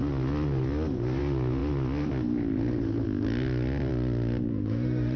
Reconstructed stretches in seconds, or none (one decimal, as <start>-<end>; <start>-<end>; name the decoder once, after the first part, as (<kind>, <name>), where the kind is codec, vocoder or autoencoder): 4.5-5.2 (autoencoder, DAC-VAE)